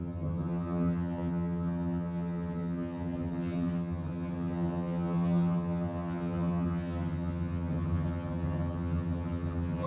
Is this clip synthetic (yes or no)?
yes